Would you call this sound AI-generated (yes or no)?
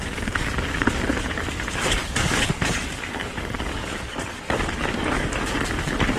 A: yes